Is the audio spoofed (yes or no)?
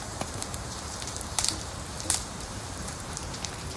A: yes